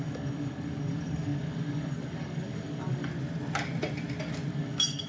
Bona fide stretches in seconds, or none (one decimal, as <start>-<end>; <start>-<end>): 3.1-4.5